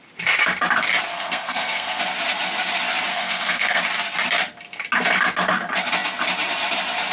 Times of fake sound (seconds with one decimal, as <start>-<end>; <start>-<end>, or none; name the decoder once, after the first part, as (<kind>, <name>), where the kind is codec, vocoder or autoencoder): 1.1-2.0 (codec, SNAC); 3.1-3.8